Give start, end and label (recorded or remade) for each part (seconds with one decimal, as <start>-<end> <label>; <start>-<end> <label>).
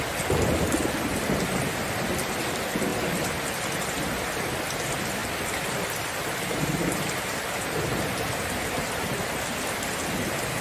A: 0.0-5.2 recorded; 5.2-6.2 remade; 6.2-10.6 recorded